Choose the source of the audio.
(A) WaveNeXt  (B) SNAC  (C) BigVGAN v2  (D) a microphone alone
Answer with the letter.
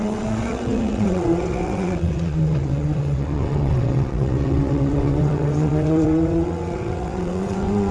A